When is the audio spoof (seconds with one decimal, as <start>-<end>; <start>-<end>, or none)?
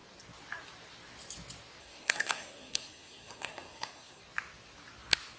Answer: 1.8-4.2